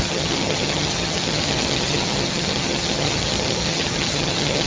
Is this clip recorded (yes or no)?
no